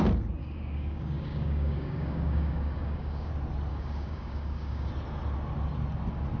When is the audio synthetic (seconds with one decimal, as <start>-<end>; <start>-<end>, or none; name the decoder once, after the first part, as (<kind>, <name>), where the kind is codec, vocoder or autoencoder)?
0.4-3.3 (codec, DAC); 3.7-4.9